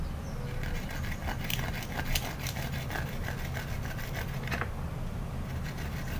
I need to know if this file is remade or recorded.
recorded